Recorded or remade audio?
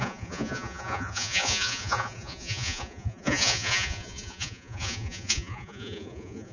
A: remade